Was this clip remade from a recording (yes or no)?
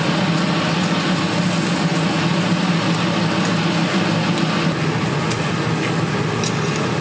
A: no